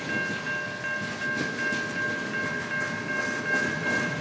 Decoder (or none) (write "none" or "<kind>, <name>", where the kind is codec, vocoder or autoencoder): none